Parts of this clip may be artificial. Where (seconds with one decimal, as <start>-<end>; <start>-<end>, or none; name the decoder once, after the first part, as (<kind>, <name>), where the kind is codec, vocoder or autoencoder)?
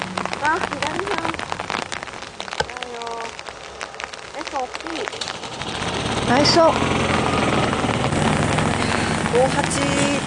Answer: none